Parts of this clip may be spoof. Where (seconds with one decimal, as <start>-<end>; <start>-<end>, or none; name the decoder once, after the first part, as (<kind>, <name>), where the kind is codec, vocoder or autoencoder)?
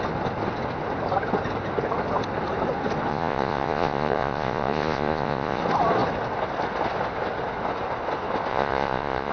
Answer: 3.1-5.6 (vocoder, Vocos); 8.5-9.3